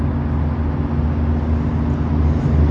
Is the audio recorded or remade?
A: recorded